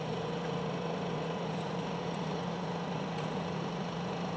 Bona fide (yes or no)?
no